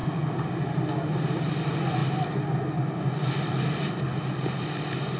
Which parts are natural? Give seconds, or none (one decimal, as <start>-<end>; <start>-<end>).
0.0-5.2